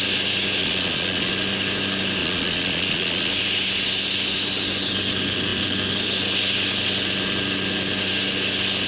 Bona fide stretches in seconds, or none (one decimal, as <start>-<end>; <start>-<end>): 0.0-0.6; 1.3-2.2; 3.3-8.9